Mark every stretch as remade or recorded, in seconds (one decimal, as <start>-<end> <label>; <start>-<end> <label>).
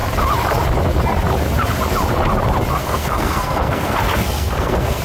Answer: 0.0-2.8 recorded; 2.8-5.0 remade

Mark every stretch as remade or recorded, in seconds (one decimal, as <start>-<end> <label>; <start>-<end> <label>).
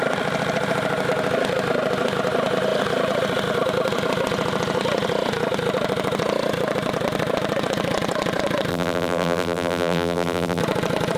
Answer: 0.0-8.7 recorded; 8.7-10.6 remade; 10.6-11.2 recorded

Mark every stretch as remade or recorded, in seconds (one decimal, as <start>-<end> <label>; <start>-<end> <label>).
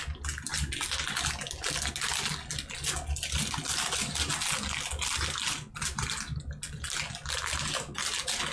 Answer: 0.0-8.5 recorded